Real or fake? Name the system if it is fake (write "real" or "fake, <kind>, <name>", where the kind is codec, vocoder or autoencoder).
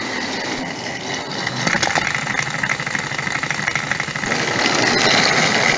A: real